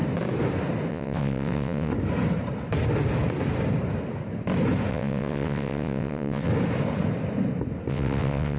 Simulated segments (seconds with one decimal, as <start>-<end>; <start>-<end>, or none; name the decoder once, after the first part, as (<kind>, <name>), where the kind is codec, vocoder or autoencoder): 0.9-1.9 (vocoder, WaveNeXt); 4.9-6.5; 7.9-8.6